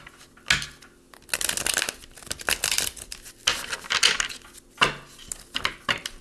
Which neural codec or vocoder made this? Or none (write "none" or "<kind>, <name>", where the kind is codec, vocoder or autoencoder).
none